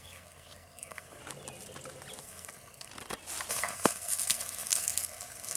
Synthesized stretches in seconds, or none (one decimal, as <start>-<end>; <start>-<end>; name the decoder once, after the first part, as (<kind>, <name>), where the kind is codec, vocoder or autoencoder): 0.0-1.2 (codec, SNAC); 2.2-2.9; 3.5-5.6